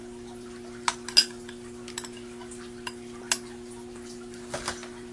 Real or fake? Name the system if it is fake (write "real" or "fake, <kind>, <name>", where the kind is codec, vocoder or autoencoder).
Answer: real